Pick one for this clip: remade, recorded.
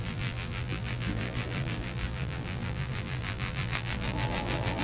remade